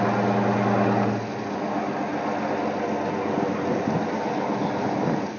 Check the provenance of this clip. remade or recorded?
recorded